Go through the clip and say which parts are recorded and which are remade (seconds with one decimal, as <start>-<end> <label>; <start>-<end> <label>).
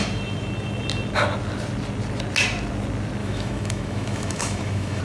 0.0-3.2 recorded; 3.2-5.0 remade